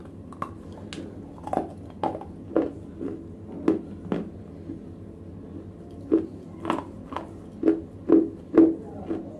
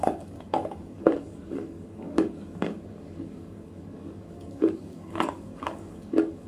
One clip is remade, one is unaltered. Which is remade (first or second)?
second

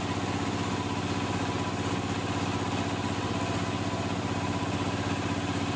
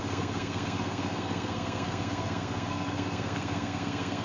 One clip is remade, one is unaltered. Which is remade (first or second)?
second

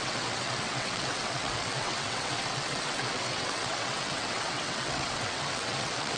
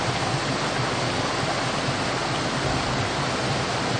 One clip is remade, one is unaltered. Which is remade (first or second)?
first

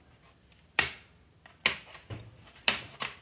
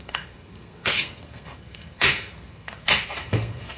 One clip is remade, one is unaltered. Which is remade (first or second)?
second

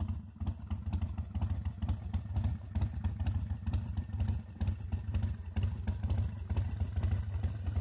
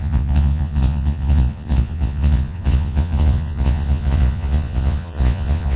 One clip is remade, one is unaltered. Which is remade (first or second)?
second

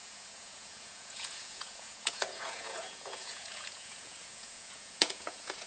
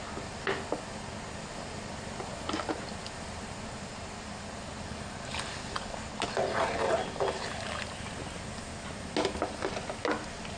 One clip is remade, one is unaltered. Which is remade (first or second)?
first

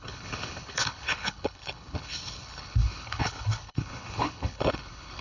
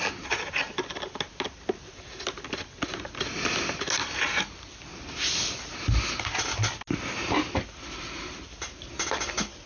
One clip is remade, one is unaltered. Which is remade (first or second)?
first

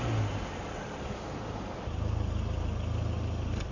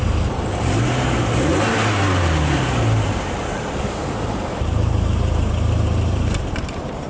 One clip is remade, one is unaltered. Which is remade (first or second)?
second